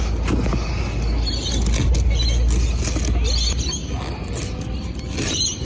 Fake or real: real